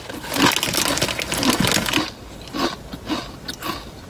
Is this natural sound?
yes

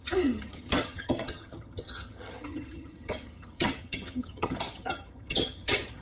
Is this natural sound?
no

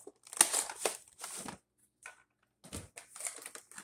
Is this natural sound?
yes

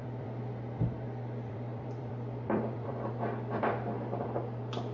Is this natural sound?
no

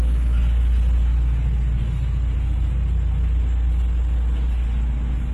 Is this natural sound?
yes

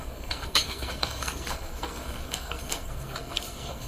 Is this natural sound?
no